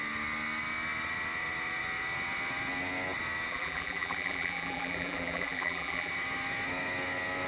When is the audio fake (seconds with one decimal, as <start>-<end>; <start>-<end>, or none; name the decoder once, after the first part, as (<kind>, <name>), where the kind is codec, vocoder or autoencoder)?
3.5-6.1 (vocoder, BigVGAN v2)